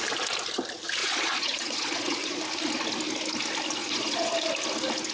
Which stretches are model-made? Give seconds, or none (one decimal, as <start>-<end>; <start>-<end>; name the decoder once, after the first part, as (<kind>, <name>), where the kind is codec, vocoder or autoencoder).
1.0-2.4 (vocoder, Vocos); 3.8-4.3